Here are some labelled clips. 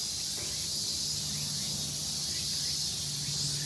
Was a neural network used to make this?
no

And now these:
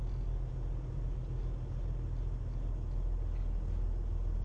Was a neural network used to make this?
no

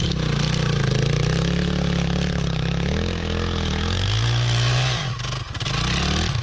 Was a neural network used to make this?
no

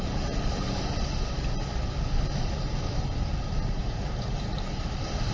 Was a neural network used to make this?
no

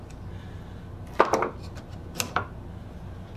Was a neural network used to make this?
no